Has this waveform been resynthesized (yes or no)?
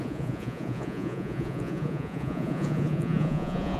yes